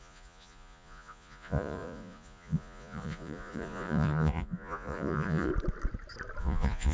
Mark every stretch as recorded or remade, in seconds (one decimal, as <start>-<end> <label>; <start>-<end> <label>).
0.0-5.5 remade; 5.5-6.4 recorded; 6.4-6.9 remade

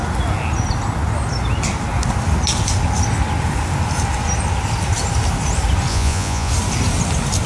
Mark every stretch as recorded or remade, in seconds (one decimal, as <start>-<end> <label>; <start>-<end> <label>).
0.0-5.9 recorded; 5.9-6.5 remade; 6.5-7.5 recorded

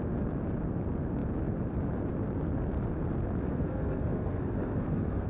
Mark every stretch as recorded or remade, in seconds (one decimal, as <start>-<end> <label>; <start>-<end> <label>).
0.0-3.4 recorded; 3.4-5.3 remade

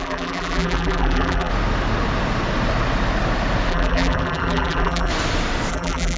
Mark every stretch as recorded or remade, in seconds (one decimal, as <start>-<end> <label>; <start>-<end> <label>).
0.0-1.5 remade; 1.5-3.7 recorded; 3.7-5.1 remade; 5.1-5.7 recorded; 5.7-6.2 remade

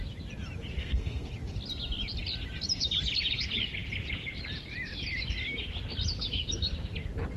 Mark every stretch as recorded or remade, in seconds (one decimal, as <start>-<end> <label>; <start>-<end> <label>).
0.0-0.8 recorded; 0.8-1.3 remade; 1.3-7.4 recorded

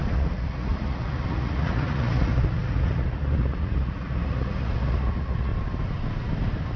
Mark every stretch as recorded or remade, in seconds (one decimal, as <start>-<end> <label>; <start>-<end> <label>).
0.0-5.5 remade; 5.5-6.8 recorded